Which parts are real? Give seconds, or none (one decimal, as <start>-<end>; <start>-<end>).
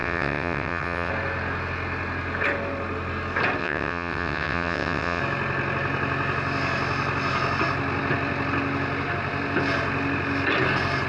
1.1-3.6; 5.2-11.1